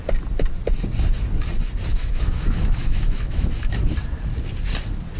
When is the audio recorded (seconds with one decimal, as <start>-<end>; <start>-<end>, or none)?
0.0-1.9; 3.8-5.2